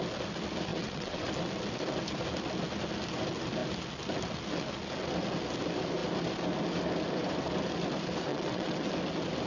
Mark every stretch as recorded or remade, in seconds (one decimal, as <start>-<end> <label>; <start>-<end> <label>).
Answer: 0.0-0.7 recorded; 0.7-1.3 remade; 1.3-8.3 recorded; 8.3-8.9 remade; 8.9-9.5 recorded